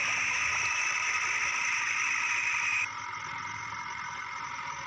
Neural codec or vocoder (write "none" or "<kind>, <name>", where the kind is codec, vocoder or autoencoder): none